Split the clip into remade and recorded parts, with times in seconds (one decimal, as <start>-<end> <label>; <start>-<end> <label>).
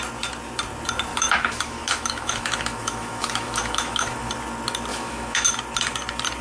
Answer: 0.0-1.1 recorded; 1.1-4.3 remade; 4.3-4.9 recorded; 4.9-5.5 remade; 5.5-6.4 recorded